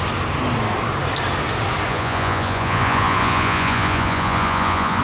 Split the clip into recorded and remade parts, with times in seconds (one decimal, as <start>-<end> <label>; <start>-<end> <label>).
0.0-1.9 recorded; 1.9-5.0 remade